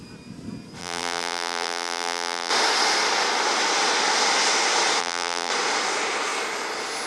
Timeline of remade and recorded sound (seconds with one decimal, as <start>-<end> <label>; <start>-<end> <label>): 0.0-0.8 recorded; 0.8-2.5 remade; 2.5-5.0 recorded; 5.0-5.5 remade; 5.5-7.1 recorded

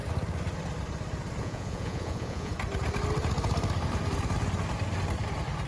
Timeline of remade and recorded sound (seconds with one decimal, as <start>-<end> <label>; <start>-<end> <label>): 0.0-1.4 recorded; 1.4-2.5 remade; 2.5-5.7 recorded

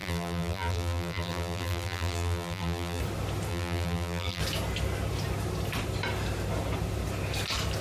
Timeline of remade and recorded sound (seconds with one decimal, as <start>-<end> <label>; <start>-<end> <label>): 0.0-3.0 remade; 3.0-3.5 recorded; 3.5-4.4 remade; 4.4-7.8 recorded

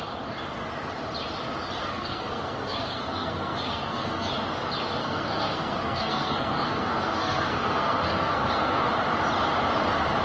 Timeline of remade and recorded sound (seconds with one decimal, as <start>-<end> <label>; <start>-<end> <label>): 0.0-1.8 recorded; 1.8-4.3 remade; 4.3-5.0 recorded; 5.0-8.9 remade; 8.9-10.2 recorded

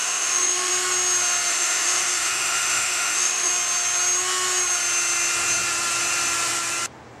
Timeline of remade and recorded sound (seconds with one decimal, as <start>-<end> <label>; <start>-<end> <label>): 0.0-0.7 remade; 0.7-1.5 recorded; 1.5-3.5 remade; 3.5-7.2 recorded

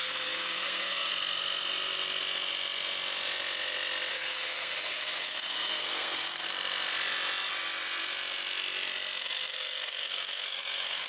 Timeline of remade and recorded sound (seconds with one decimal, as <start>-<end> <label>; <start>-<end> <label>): 0.0-1.1 remade; 1.1-4.1 recorded; 4.1-6.5 remade; 6.5-9.2 recorded; 9.2-11.1 remade

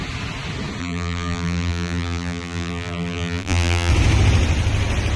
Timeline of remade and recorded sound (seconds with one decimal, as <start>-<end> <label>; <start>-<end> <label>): 0.0-0.8 recorded; 0.8-3.9 remade; 3.9-5.2 recorded